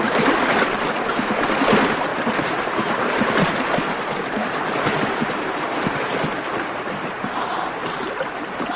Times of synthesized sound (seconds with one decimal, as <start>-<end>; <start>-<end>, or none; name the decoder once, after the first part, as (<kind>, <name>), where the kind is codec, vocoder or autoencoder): 2.1-3.4 (vocoder, BigVGAN v2); 4.4-8.8